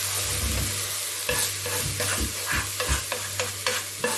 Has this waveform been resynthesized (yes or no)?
no